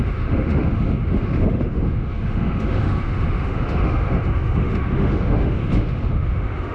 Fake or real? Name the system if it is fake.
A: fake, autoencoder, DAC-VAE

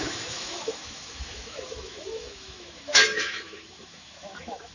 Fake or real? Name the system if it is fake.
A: fake, autoencoder, DAC-VAE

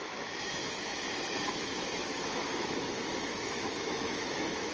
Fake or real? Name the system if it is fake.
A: fake, autoencoder, DAC-VAE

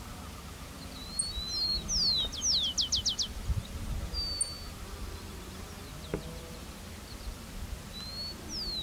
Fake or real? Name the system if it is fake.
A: real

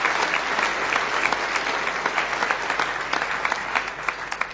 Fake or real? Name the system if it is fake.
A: real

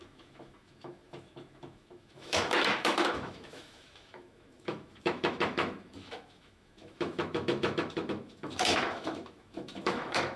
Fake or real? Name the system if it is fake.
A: fake, autoencoder, DAC-VAE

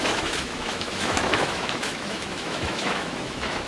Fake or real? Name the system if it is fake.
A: fake, autoencoder, DAC-VAE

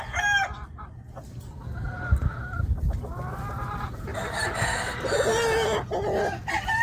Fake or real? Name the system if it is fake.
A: real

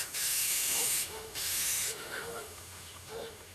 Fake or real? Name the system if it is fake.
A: fake, autoencoder, DAC-VAE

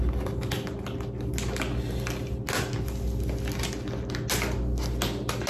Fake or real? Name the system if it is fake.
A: real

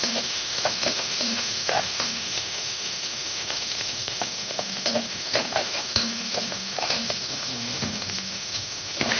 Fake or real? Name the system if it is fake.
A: fake, autoencoder, DAC-VAE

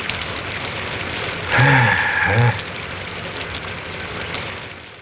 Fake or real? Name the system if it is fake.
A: real